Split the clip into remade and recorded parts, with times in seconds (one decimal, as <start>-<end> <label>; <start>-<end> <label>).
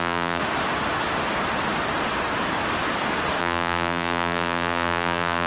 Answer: 0.0-0.4 remade; 0.4-3.4 recorded; 3.4-5.5 remade